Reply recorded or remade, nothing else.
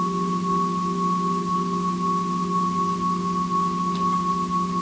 recorded